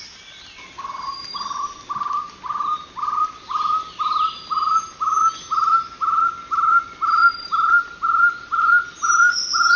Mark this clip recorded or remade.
recorded